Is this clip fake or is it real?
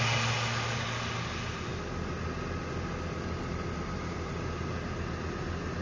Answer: real